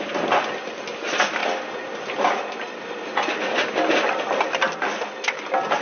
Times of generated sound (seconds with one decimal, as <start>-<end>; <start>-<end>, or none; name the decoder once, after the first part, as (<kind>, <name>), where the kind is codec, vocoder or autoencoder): none